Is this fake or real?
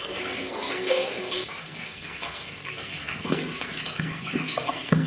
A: fake